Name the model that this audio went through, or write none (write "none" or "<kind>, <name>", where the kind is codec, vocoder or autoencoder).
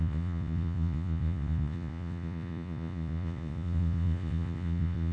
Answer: vocoder, Vocos